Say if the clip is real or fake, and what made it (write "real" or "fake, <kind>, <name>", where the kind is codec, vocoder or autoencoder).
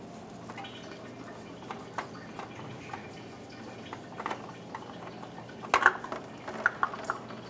real